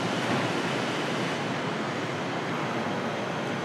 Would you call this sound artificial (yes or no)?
no